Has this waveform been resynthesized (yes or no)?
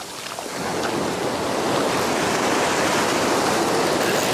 no